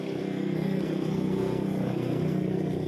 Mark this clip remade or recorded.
remade